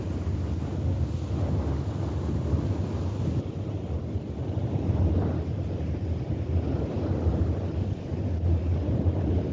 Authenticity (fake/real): real